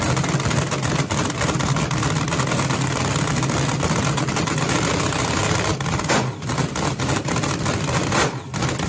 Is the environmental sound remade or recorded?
remade